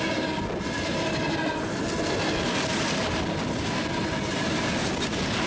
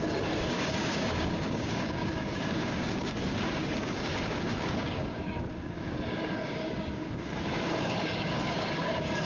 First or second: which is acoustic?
first